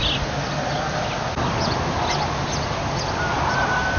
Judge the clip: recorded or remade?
recorded